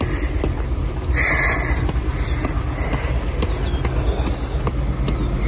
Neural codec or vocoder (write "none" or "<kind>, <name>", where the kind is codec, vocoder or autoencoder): none